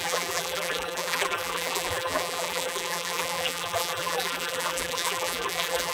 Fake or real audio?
fake